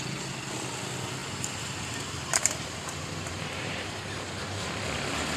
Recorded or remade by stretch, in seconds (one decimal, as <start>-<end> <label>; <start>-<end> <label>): 0.0-1.2 recorded; 1.2-4.4 remade; 4.4-5.4 recorded